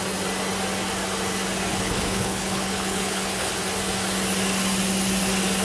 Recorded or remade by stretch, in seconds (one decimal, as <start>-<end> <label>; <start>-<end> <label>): 0.0-1.7 recorded; 1.7-3.5 remade; 3.5-5.6 recorded